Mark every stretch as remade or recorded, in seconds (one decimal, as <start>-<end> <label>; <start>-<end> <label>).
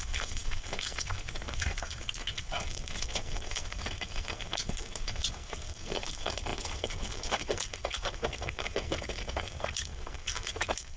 0.0-11.0 remade